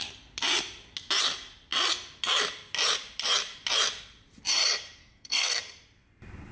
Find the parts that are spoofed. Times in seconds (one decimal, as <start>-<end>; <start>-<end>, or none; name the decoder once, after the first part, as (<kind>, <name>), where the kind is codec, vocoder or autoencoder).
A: 5.0-5.6 (codec, SNAC)